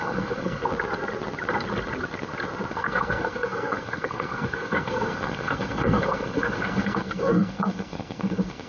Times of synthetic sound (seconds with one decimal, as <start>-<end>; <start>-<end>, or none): 0.0-0.6; 2.7-8.7